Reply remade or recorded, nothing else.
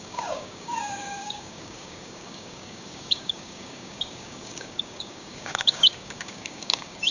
remade